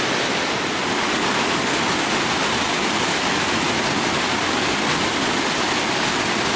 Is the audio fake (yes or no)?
no